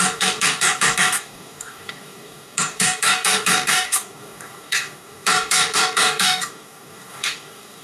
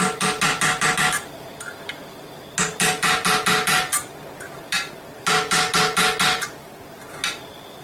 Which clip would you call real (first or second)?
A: second